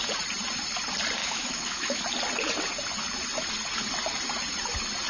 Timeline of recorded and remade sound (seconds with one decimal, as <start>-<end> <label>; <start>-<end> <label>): 0.0-1.2 recorded; 1.2-2.0 remade; 2.0-5.1 recorded